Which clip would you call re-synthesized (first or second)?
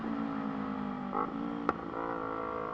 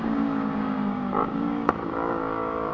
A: second